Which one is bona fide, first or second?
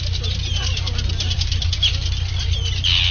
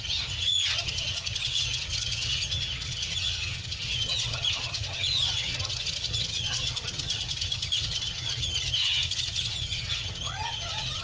first